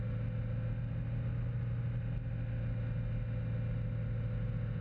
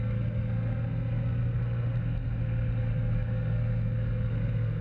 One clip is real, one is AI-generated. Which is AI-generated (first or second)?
second